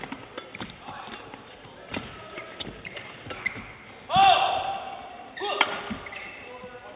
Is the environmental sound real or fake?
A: fake